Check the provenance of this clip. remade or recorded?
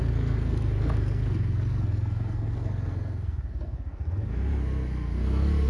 remade